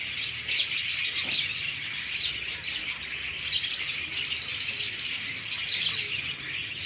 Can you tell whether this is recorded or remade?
recorded